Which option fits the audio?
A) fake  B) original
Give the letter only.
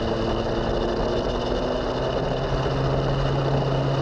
B